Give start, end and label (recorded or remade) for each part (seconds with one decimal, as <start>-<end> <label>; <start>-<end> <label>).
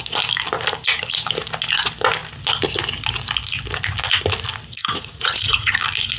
0.0-4.8 recorded; 4.8-5.8 remade; 5.8-6.2 recorded